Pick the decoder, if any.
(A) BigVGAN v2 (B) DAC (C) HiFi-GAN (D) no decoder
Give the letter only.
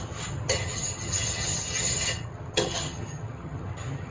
C